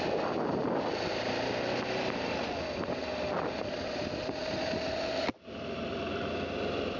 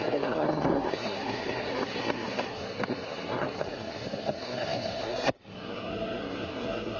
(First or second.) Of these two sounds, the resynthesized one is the second